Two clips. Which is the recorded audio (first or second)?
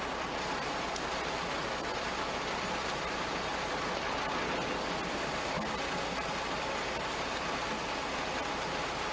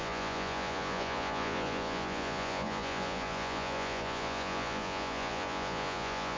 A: first